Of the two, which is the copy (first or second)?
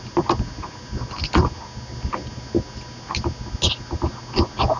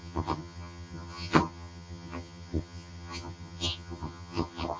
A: second